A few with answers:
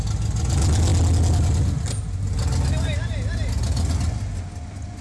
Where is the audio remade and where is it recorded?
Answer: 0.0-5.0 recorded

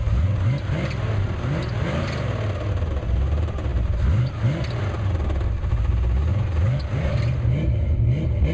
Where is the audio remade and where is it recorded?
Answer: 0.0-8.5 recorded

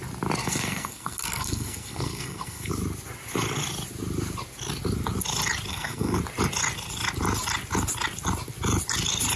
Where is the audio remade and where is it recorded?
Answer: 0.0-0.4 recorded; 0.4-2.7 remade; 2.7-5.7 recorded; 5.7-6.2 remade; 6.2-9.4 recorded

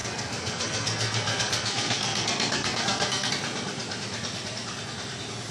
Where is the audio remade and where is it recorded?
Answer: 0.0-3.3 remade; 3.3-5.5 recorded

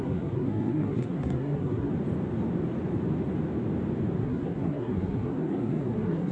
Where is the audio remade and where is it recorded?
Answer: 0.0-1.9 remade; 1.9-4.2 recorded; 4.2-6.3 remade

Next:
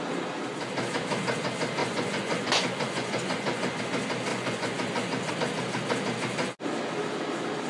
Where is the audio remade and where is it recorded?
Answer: 0.0-1.8 recorded; 1.8-3.8 remade; 3.8-4.3 recorded; 4.3-5.3 remade; 5.3-7.7 recorded